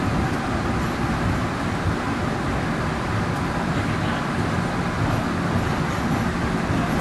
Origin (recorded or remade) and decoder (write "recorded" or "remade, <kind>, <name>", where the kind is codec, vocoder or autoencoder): recorded